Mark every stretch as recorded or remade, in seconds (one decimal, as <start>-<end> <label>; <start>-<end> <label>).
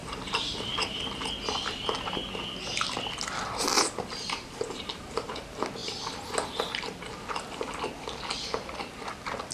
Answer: 0.0-1.3 remade; 1.3-3.7 recorded; 3.7-5.3 remade; 5.3-9.5 recorded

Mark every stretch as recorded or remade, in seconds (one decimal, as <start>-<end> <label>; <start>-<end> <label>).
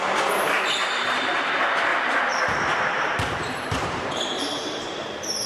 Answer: 0.0-0.8 recorded; 0.8-1.5 remade; 1.5-1.9 recorded; 1.9-5.5 remade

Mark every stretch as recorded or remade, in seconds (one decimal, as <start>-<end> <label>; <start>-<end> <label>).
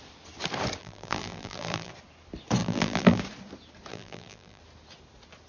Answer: 0.0-0.8 recorded; 0.8-1.9 remade; 1.9-2.6 recorded; 2.6-3.2 remade; 3.2-3.9 recorded; 3.9-4.6 remade; 4.6-5.5 recorded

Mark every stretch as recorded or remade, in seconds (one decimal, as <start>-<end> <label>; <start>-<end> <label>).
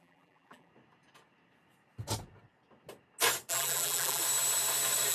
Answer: 0.0-0.7 remade; 0.7-3.5 recorded; 3.5-4.2 remade; 4.2-5.1 recorded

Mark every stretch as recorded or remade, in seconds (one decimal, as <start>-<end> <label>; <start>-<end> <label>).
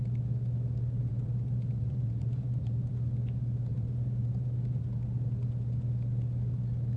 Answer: 0.0-1.1 recorded; 1.1-2.9 remade; 2.9-3.7 recorded; 3.7-4.8 remade; 4.8-7.0 recorded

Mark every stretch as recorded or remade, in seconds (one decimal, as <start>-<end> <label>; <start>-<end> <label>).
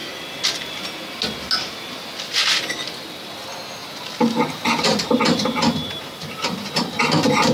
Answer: 0.0-3.8 recorded; 3.8-7.5 remade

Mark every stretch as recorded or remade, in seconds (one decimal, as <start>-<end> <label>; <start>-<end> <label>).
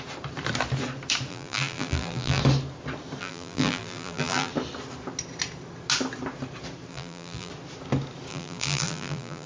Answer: 0.0-1.3 recorded; 1.3-2.4 remade; 2.4-3.2 recorded; 3.2-4.5 remade; 4.5-6.9 recorded; 6.9-7.5 remade; 7.5-8.3 recorded; 8.3-9.5 remade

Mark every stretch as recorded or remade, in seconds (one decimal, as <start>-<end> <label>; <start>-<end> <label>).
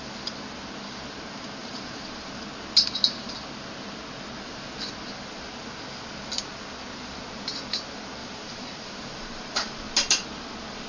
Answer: 0.0-1.6 recorded; 1.6-2.4 remade; 2.4-8.2 recorded; 8.2-9.8 remade; 9.8-10.9 recorded